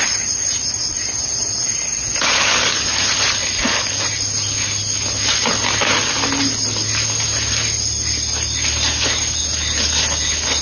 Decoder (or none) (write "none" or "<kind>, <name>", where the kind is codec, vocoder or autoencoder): none